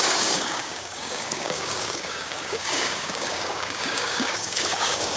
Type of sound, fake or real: fake